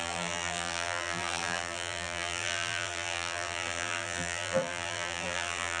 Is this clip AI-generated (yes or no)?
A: yes